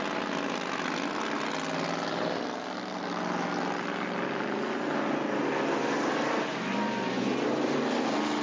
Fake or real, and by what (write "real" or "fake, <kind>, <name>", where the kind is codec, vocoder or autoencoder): real